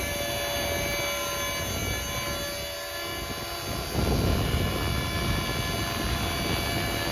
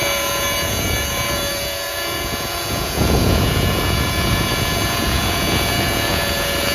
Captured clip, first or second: first